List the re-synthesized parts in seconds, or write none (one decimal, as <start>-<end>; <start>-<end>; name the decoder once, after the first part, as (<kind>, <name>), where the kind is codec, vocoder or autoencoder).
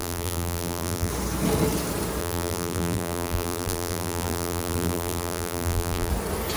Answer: 0.0-1.1 (vocoder, BigVGAN v2); 2.2-6.1